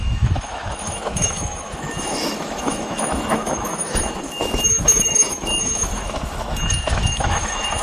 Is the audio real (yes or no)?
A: no